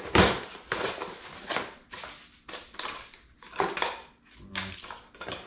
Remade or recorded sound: recorded